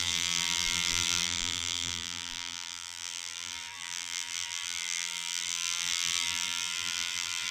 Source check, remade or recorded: remade